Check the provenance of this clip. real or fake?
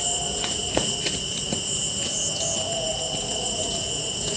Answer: fake